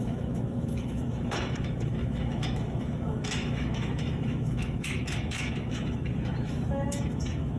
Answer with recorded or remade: remade